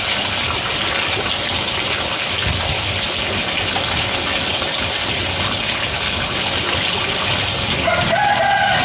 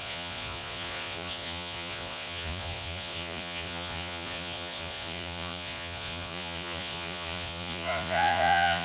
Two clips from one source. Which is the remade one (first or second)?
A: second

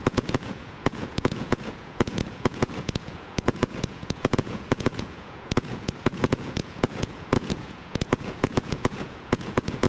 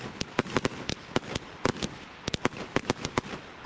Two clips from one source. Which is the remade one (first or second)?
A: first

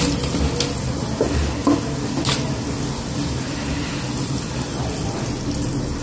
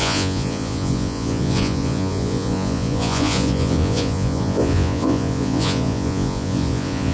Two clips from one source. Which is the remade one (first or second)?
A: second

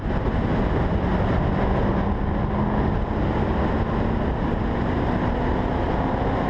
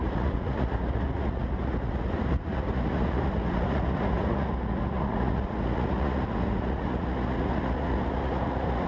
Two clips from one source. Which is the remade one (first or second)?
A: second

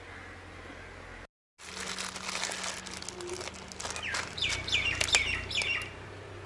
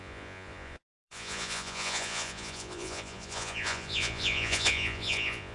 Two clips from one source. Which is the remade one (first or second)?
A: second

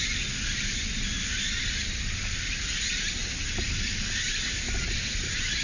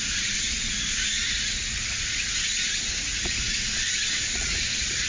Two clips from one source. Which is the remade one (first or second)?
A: second